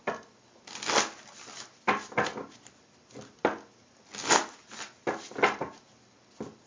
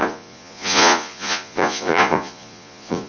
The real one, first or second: first